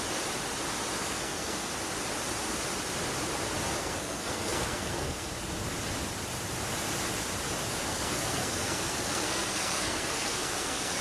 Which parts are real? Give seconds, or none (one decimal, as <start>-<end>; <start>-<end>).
0.0-1.0; 1.7-3.8; 5.3-7.8